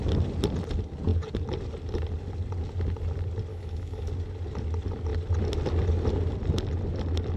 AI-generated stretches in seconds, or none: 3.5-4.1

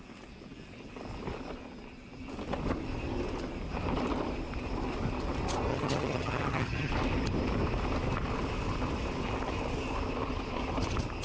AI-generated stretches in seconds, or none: 5.7-6.9

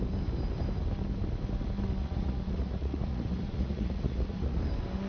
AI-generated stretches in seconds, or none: 2.0-4.6

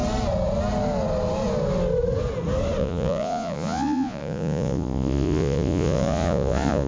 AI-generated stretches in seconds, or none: 2.8-6.9

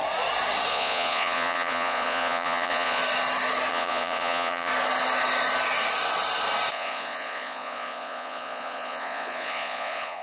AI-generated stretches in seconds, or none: 0.7-3.0; 3.7-4.7; 6.7-10.2